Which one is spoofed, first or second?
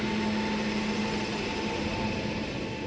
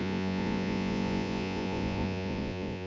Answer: second